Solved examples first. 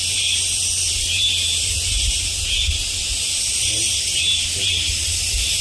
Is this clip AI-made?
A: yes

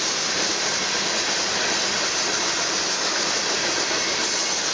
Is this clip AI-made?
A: no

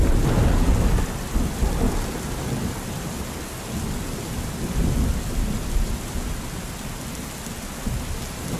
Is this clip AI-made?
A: no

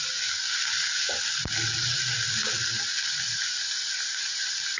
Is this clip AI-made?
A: no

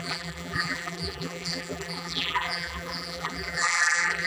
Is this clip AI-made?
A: yes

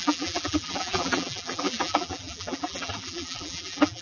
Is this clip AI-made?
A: yes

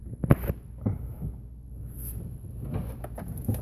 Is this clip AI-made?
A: no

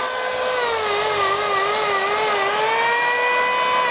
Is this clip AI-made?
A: no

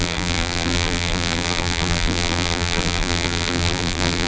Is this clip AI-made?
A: yes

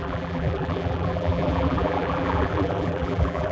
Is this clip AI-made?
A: yes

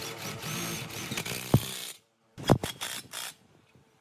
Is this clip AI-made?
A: yes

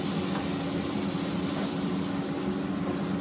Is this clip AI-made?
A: no